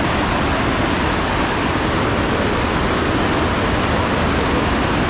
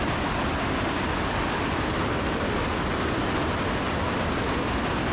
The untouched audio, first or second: first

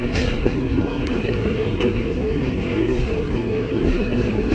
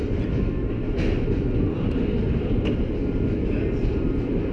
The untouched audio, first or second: second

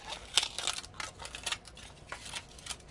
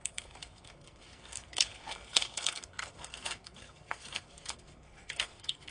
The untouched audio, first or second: first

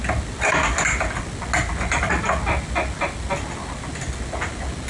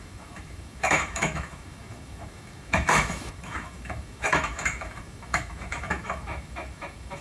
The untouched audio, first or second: first